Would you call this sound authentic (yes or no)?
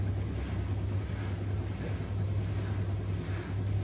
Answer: yes